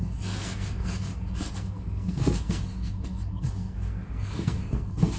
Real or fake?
fake